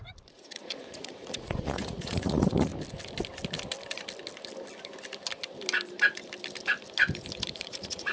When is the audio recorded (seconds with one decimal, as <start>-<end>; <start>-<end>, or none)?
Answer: 2.7-7.6